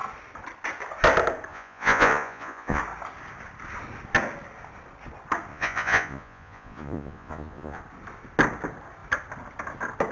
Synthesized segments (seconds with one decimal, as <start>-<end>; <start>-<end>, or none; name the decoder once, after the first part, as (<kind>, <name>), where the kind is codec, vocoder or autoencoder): 1.5-2.8 (vocoder, Vocos); 5.5-7.8